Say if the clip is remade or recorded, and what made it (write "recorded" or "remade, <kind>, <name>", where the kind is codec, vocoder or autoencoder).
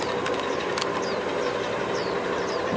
recorded